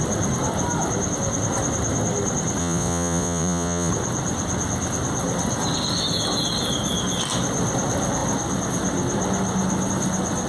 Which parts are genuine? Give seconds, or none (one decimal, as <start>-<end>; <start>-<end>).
0.0-2.6; 3.9-10.5

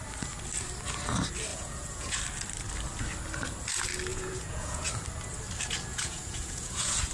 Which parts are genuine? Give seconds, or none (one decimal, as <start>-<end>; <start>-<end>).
0.0-1.5; 2.2-4.1; 4.9-5.9

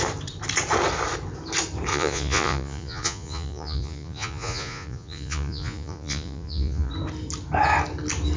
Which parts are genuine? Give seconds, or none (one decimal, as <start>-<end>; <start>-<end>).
0.0-1.9; 6.9-8.4

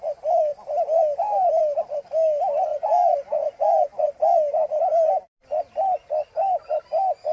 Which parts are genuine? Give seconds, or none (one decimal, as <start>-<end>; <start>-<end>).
0.0-2.7; 4.0-7.3